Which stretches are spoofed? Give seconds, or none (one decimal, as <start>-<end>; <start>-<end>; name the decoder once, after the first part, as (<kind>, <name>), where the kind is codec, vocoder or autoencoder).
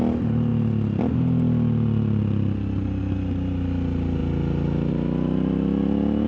none